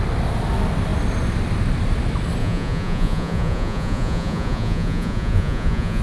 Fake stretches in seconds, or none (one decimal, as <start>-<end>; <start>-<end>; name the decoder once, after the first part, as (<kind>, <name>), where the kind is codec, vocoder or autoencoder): 2.4-6.0 (vocoder, Vocos)